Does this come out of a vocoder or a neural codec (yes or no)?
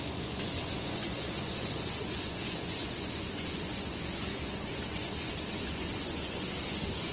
yes